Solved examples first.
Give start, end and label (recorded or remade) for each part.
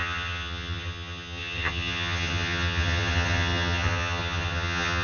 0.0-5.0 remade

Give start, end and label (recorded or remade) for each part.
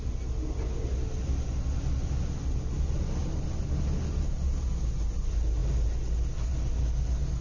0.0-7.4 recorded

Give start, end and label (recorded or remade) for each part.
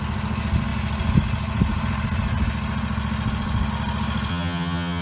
0.0-4.3 recorded; 4.3-5.0 remade